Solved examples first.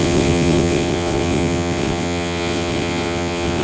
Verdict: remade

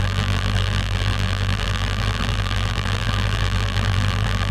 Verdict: remade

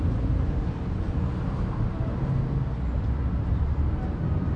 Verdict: recorded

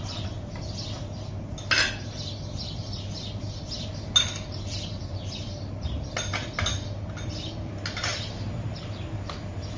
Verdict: recorded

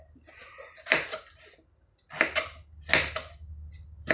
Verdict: recorded